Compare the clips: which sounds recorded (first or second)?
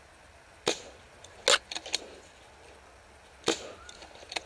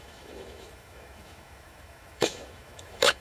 first